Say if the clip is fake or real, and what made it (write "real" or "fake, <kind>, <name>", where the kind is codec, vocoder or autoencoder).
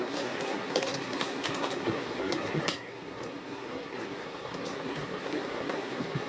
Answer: fake, codec, SNAC